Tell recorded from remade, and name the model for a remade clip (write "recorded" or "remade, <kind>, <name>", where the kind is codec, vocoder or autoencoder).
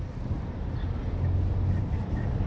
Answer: recorded